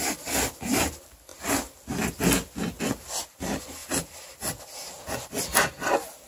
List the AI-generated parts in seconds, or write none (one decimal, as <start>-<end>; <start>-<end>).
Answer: none